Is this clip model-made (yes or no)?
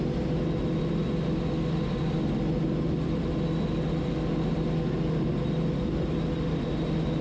no